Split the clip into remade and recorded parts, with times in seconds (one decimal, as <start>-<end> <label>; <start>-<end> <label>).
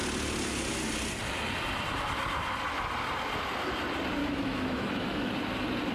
0.0-4.2 recorded; 4.2-5.3 remade; 5.3-5.9 recorded